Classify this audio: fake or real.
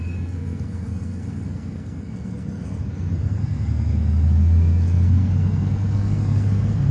fake